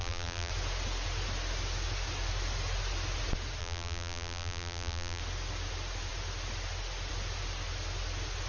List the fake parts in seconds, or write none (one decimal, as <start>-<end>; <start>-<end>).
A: 0.0-0.5; 3.6-5.2